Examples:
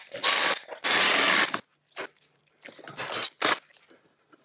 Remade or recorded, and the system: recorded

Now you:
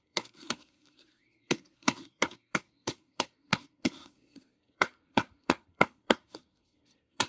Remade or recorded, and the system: remade, codec, SNAC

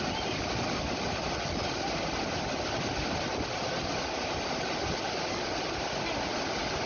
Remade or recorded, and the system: recorded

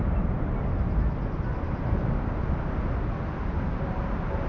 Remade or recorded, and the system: recorded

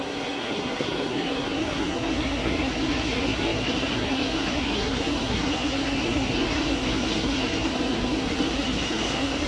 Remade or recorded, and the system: remade, codec, SNAC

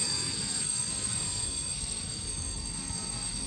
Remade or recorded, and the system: remade, codec, SNAC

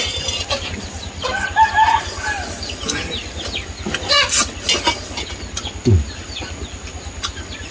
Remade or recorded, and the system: recorded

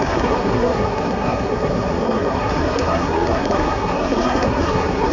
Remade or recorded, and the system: remade, codec, SNAC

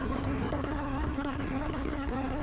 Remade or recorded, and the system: remade, codec, SNAC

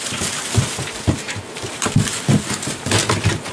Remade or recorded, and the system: recorded